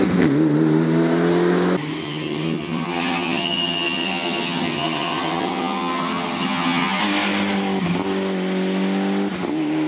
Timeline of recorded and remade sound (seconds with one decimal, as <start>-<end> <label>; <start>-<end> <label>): 0.0-2.0 recorded; 2.0-7.0 remade; 7.0-9.9 recorded